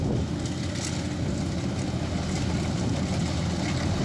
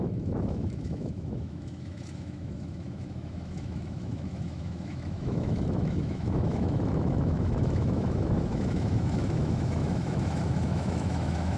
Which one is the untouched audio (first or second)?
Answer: first